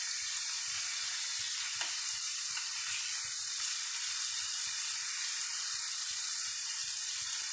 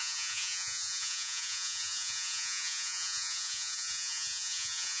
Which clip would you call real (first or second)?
first